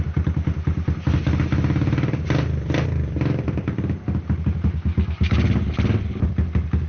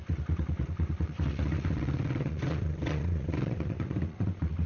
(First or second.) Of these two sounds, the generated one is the second